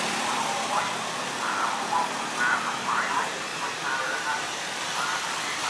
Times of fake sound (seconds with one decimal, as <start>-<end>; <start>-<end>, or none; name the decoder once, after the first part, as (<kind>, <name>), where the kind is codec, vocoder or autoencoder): none